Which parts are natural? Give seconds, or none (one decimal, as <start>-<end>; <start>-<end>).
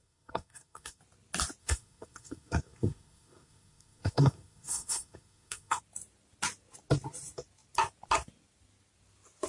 1.0-1.6; 5.8-9.5